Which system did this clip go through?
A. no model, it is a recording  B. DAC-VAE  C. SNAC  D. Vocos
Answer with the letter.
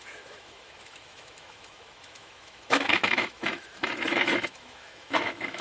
B